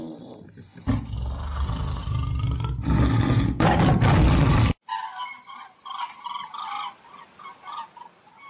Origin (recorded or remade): recorded